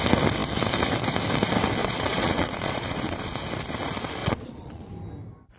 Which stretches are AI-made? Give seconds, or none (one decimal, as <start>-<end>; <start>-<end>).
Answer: 1.8-3.4; 4.2-4.9